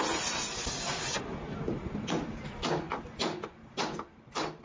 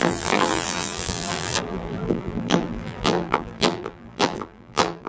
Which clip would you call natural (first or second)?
first